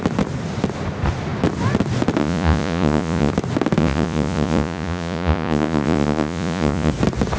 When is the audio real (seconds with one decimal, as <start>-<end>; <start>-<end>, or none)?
0.0-2.2; 3.3-3.8; 6.9-7.4